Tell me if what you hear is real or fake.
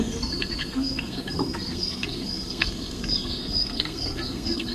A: fake